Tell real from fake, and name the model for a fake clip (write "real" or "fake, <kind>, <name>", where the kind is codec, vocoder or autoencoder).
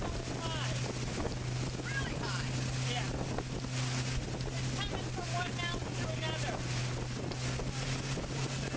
real